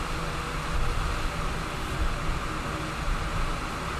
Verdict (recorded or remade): recorded